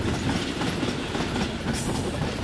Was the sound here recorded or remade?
recorded